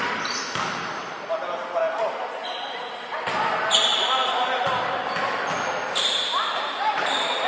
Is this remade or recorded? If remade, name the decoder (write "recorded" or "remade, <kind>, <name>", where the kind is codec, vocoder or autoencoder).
recorded